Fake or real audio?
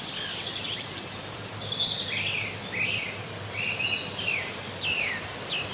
real